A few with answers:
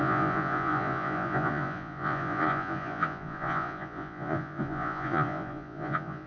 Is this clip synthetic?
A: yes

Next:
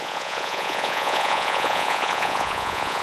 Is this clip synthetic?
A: yes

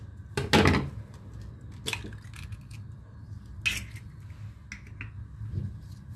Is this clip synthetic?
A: no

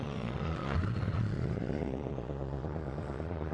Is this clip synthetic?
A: yes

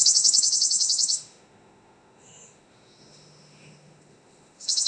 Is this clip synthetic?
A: yes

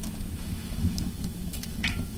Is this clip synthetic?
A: yes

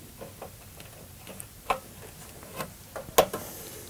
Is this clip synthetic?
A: no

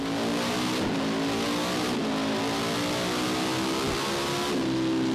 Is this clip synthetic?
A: no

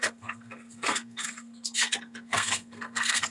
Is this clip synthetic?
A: yes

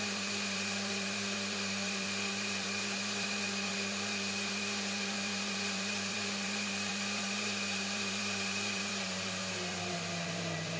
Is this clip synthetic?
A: yes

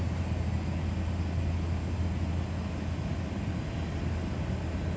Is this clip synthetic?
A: no